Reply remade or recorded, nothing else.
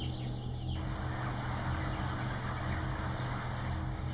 recorded